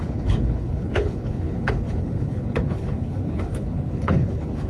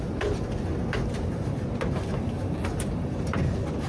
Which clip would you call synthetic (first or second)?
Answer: first